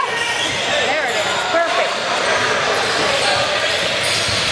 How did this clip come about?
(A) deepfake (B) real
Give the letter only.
B